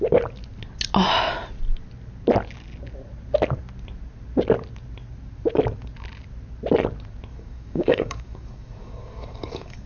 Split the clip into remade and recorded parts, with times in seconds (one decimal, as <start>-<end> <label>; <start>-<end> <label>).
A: 0.0-7.3 recorded; 7.3-9.9 remade